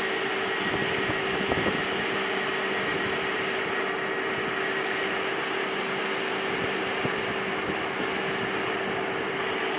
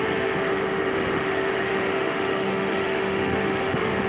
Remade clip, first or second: second